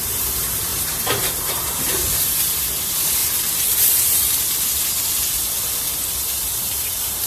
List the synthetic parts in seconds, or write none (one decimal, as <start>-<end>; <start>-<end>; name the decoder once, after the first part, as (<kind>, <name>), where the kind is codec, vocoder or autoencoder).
0.0-3.2 (vocoder, BigVGAN v2); 6.6-7.3